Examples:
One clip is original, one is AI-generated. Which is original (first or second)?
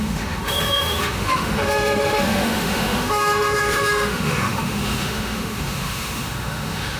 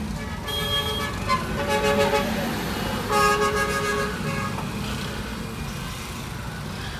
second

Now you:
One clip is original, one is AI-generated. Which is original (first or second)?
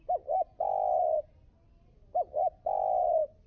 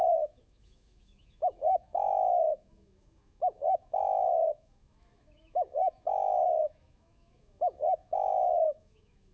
first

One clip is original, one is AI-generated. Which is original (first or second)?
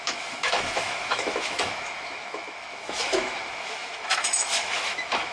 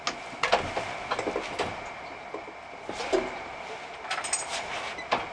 second